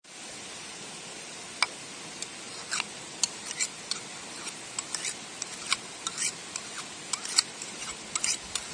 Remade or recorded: recorded